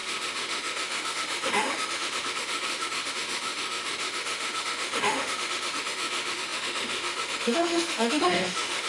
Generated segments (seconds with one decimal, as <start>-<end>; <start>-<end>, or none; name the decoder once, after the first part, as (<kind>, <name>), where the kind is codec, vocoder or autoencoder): 0.0-8.9 (autoencoder, DAC-VAE)